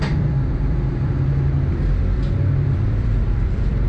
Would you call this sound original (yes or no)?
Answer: no